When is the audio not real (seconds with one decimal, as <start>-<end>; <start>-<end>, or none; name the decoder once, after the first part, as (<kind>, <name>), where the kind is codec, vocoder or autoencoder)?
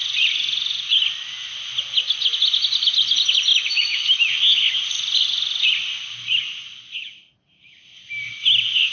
3.5-4.3 (autoencoder, DAC-VAE)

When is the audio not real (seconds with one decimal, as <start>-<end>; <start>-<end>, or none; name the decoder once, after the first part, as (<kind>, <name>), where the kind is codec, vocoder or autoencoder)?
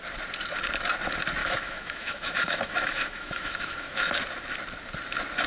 1.4-4.1 (autoencoder, DAC-VAE)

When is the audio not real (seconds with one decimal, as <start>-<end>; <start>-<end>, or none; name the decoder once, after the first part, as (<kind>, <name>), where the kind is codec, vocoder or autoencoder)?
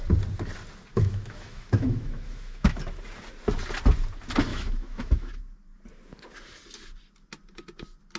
0.9-2.8 (autoencoder, DAC-VAE); 4.5-5.4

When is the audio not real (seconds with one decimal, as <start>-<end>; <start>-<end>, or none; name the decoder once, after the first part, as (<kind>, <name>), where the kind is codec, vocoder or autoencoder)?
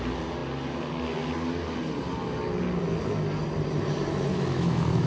4.3-5.1 (autoencoder, DAC-VAE)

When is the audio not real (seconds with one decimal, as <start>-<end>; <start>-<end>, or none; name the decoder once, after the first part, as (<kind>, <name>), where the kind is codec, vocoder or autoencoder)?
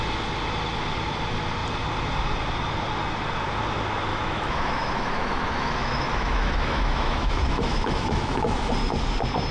4.1-8.7 (autoencoder, DAC-VAE)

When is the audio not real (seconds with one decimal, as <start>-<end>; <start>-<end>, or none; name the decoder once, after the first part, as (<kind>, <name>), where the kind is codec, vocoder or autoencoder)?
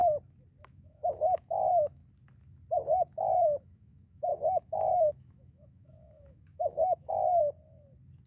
0.6-2.0 (autoencoder, DAC-VAE); 3.6-7.4